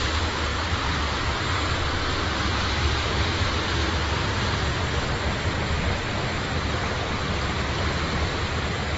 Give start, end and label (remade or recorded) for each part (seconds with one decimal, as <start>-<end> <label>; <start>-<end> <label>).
0.0-9.0 recorded